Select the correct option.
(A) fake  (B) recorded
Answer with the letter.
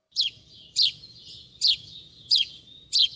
A